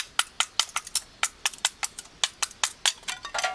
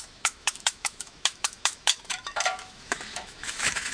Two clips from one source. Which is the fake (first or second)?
second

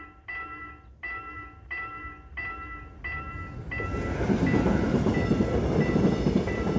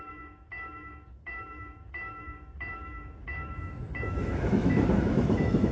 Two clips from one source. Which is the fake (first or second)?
second